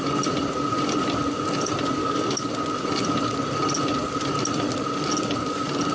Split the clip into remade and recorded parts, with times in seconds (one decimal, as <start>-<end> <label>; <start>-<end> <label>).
0.0-2.0 recorded; 2.0-2.5 remade; 2.5-5.9 recorded